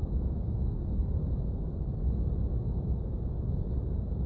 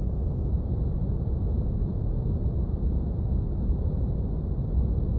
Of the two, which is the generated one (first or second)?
first